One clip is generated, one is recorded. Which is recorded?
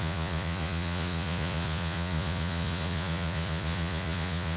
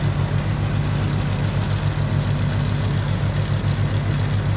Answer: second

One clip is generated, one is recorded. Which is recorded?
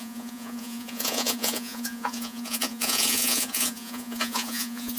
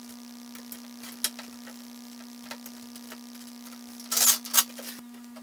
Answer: second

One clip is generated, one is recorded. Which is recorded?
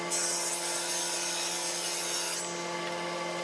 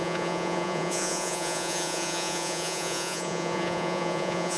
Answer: first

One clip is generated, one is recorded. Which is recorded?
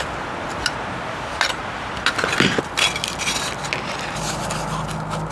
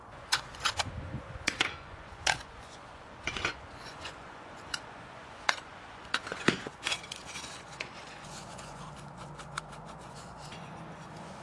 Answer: first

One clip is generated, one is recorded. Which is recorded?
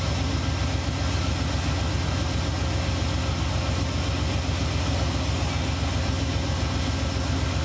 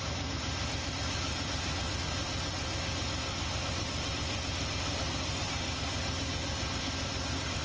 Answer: first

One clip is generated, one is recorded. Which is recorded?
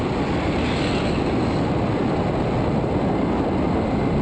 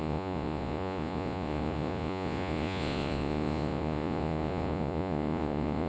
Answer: first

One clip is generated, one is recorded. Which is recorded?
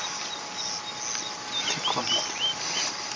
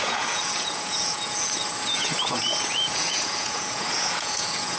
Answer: first